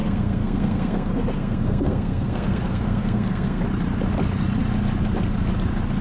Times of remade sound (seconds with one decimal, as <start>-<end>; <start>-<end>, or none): 0.0-3.6

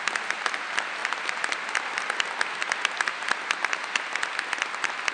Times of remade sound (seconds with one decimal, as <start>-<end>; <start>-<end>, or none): none